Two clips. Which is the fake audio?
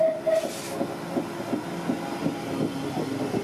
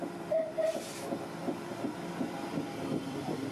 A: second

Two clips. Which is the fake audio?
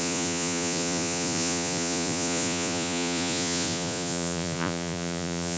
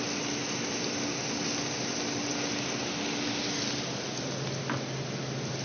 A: first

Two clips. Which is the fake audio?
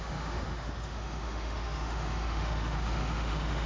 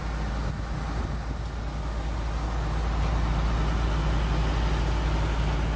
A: first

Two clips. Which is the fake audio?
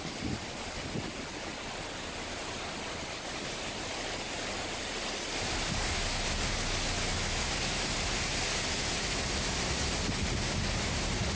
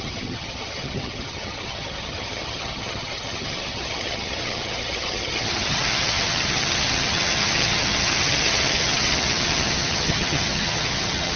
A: second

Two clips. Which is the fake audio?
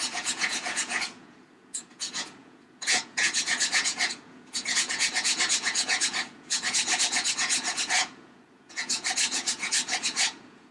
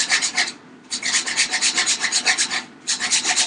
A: first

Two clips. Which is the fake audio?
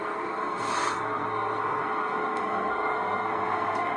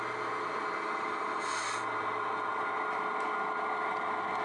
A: first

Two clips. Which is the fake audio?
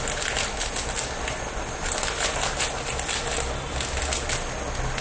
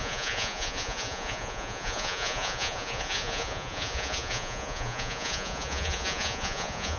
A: second